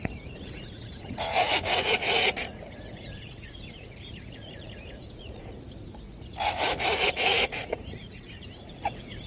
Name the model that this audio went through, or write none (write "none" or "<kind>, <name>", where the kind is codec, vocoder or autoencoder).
vocoder, Vocos